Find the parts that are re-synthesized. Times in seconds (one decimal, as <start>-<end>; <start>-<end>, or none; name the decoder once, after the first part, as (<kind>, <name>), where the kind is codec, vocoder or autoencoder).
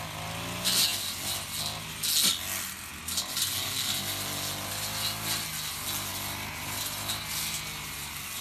none